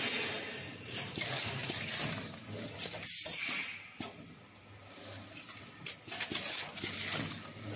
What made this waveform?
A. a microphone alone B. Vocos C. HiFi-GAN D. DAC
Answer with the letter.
A